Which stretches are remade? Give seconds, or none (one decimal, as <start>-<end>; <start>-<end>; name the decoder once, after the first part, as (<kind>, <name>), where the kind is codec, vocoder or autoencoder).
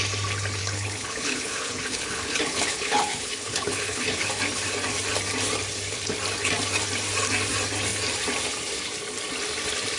0.6-4.3 (codec, HILCodec)